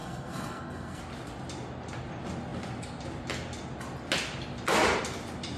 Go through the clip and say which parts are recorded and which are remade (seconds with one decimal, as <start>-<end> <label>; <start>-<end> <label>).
0.0-1.0 remade; 1.0-5.6 recorded